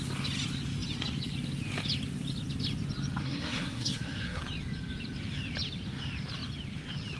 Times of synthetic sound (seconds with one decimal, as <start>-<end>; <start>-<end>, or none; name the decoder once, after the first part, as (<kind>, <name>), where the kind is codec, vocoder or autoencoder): 3.2-4.4 (codec, SNAC)